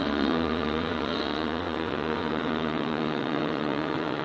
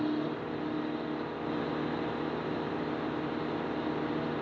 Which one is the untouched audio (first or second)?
second